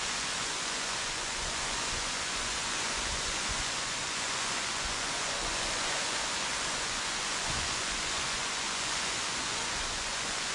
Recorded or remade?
remade